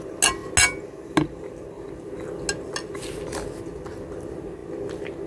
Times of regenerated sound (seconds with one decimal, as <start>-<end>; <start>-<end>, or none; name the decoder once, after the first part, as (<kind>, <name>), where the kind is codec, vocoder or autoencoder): none